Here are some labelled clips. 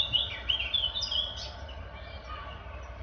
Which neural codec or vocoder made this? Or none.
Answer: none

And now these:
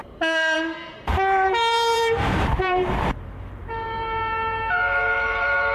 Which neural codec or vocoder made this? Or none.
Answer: vocoder, BigVGAN v2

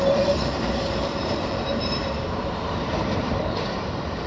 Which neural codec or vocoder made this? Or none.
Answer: vocoder, BigVGAN v2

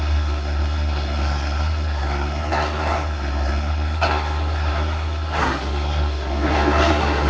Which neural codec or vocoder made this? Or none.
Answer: codec, SNAC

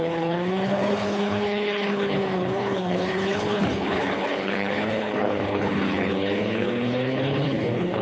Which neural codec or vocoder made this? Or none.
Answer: codec, HILCodec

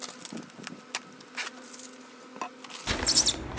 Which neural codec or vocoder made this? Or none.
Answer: none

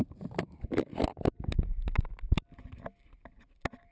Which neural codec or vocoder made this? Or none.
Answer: none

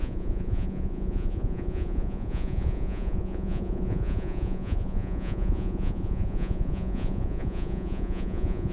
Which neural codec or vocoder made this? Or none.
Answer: vocoder, Vocos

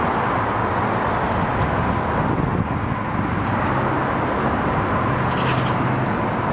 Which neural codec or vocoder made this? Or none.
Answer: none